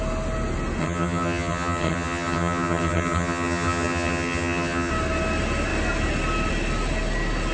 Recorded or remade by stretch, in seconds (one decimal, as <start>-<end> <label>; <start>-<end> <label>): 0.0-0.8 recorded; 0.8-4.9 remade; 4.9-7.5 recorded

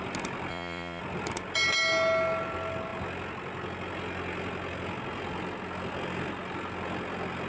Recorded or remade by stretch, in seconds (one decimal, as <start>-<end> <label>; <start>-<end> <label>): 0.0-0.5 recorded; 0.5-1.0 remade; 1.0-7.5 recorded

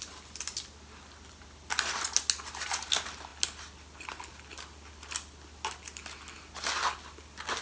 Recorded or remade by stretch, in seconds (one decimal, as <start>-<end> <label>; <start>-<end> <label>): 0.0-7.6 recorded

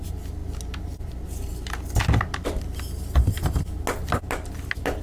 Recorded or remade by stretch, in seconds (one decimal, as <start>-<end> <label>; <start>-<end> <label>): 0.0-5.0 recorded

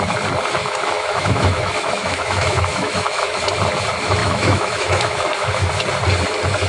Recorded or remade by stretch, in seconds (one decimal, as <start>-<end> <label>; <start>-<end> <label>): 0.0-0.6 recorded; 0.6-3.4 remade; 3.4-4.2 recorded; 4.2-5.7 remade; 5.7-6.7 recorded